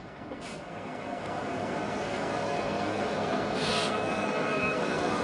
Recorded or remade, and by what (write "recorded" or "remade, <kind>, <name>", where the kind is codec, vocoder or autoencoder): remade, codec, SNAC